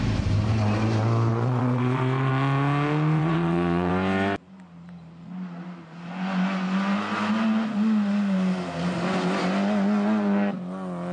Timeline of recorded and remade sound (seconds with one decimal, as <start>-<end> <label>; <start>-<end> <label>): 0.0-1.3 recorded; 1.3-2.3 remade; 2.3-3.2 recorded; 3.2-3.9 remade; 3.9-11.1 recorded

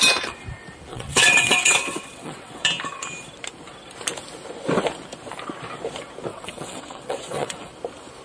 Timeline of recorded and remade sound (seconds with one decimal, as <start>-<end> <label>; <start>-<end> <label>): 0.0-0.9 recorded; 0.9-2.6 remade; 2.6-6.3 recorded; 6.3-7.7 remade; 7.7-8.2 recorded

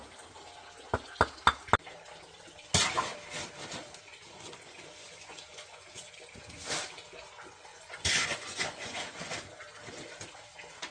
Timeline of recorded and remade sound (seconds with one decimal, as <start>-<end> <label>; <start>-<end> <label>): 0.0-4.1 recorded; 4.1-6.1 remade; 6.1-7.7 recorded; 7.7-9.3 remade; 9.3-10.9 recorded

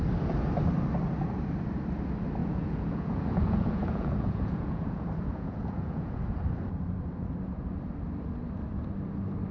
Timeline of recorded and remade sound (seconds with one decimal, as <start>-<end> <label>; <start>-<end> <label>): 0.0-2.4 recorded; 2.4-6.2 remade; 6.2-9.5 recorded

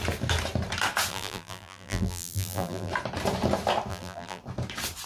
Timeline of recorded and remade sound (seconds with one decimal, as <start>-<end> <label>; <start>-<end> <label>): 0.0-1.1 recorded; 1.1-2.9 remade; 2.9-3.9 recorded; 3.9-4.4 remade; 4.4-5.1 recorded

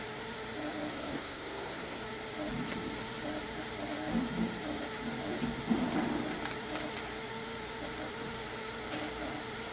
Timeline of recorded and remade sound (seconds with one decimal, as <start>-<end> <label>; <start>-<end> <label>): 0.0-0.9 recorded; 0.9-2.0 remade; 2.0-9.7 recorded

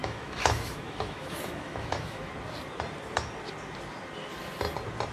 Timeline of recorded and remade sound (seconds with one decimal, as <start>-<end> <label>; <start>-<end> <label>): 0.0-2.3 remade; 2.3-5.1 recorded